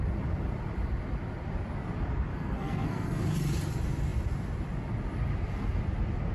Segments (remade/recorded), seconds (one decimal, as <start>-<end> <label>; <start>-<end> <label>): 0.0-2.3 recorded; 2.3-3.2 remade; 3.2-6.3 recorded